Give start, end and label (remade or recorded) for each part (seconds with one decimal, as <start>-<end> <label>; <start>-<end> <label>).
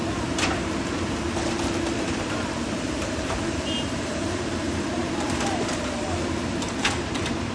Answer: 0.0-0.6 recorded; 0.6-7.5 remade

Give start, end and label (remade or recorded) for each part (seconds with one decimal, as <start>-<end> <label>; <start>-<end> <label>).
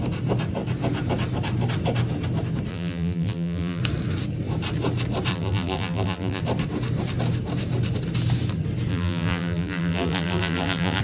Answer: 0.0-2.7 recorded; 2.7-3.8 remade; 3.8-5.3 recorded; 5.3-6.4 remade; 6.4-8.9 recorded; 8.9-11.0 remade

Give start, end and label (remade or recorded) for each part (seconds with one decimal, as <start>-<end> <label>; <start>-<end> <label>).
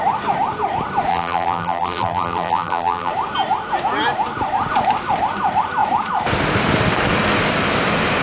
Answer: 0.0-1.1 recorded; 1.1-3.1 remade; 3.1-8.2 recorded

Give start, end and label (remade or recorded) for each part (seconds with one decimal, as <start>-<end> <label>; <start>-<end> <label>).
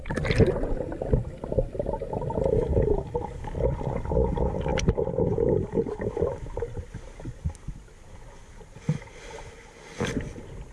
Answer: 0.0-4.7 recorded; 4.7-5.9 remade; 5.9-10.7 recorded